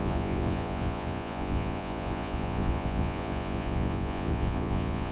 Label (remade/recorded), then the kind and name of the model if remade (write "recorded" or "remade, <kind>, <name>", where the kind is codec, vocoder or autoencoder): remade, vocoder, Vocos